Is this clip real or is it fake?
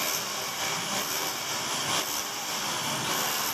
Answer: real